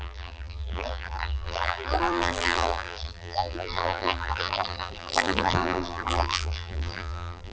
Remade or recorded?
remade